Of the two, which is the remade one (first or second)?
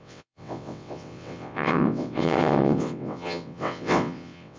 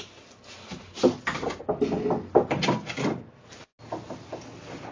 first